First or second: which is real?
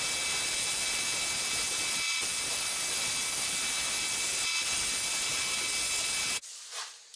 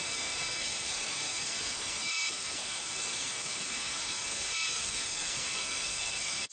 first